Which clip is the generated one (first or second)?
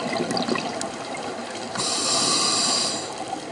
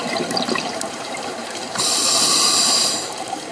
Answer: second